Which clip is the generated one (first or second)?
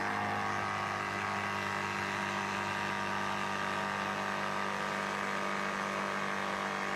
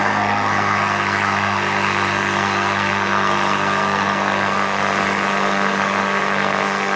second